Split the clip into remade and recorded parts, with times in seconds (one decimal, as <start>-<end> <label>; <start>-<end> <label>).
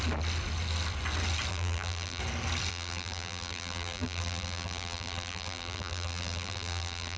0.0-1.5 recorded; 1.5-2.2 remade; 2.2-2.7 recorded; 2.7-7.2 remade